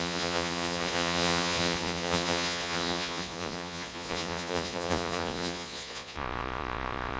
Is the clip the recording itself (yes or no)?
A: no